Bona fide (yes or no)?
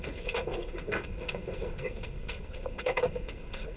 no